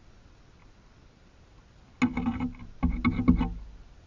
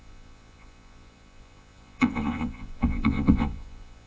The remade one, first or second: second